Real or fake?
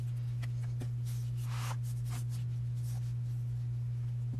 real